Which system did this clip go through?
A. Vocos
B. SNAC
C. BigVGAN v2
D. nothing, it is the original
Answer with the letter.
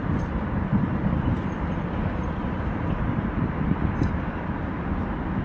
C